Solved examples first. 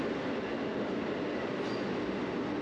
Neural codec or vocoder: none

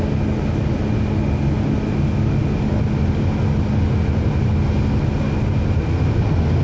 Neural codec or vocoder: none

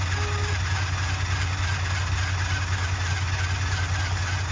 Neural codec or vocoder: none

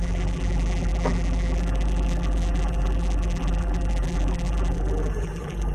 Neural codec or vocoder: vocoder, BigVGAN v2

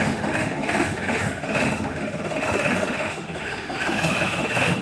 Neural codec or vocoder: autoencoder, DAC-VAE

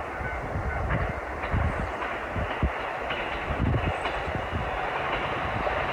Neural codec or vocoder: none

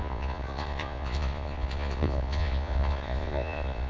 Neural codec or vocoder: vocoder, Vocos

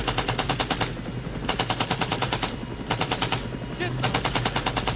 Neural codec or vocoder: none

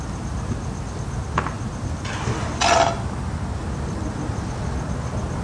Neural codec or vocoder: none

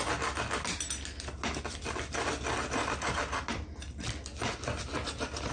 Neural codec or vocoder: none